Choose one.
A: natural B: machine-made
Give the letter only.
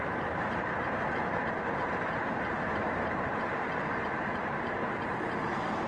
B